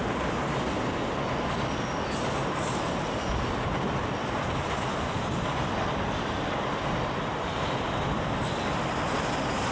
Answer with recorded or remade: recorded